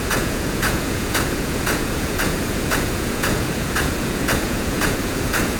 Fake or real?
fake